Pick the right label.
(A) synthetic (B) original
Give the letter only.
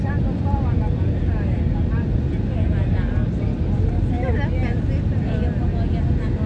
B